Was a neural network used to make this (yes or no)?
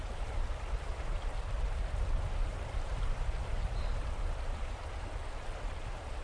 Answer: no